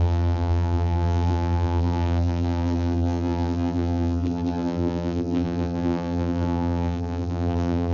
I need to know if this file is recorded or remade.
remade